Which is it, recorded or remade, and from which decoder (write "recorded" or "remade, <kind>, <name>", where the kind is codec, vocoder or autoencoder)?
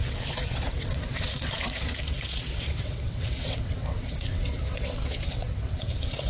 remade, vocoder, WaveNeXt